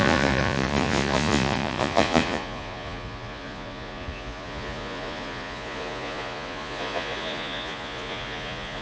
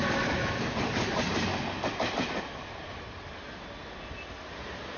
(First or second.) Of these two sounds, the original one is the second